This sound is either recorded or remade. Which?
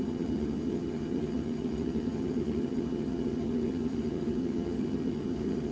remade